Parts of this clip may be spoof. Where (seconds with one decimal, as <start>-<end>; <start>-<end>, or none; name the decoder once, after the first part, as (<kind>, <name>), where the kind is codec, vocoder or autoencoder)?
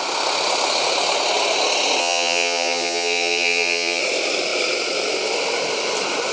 2.0-4.0 (vocoder, HiFi-GAN)